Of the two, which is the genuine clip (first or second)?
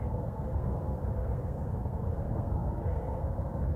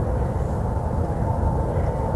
second